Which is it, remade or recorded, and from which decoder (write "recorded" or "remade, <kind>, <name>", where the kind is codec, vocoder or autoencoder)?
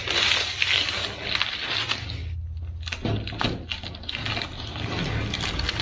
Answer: recorded